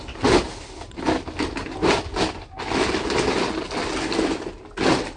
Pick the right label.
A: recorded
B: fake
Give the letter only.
A